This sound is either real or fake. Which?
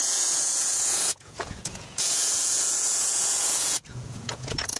fake